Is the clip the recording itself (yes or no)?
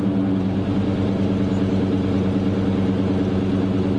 yes